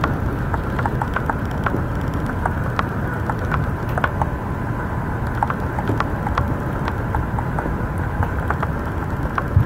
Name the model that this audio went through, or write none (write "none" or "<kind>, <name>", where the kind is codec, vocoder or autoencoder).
vocoder, BigVGAN v2